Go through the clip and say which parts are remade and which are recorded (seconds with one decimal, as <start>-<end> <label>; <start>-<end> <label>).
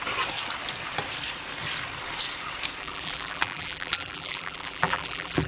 0.0-2.8 recorded; 2.8-5.5 remade